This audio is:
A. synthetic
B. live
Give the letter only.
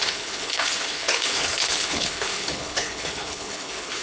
A